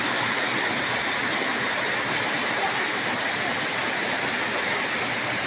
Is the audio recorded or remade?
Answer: recorded